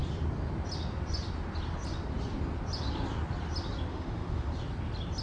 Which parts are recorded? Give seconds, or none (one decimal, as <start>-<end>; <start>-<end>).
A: 0.0-3.9; 4.5-5.2